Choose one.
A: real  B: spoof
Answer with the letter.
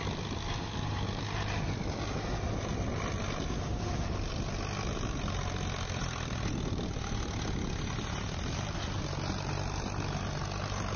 A